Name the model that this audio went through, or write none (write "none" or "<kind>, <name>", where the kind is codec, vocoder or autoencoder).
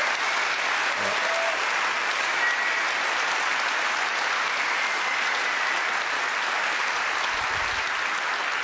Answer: none